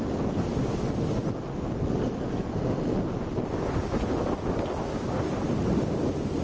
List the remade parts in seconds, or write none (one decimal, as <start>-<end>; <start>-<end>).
2.0-2.5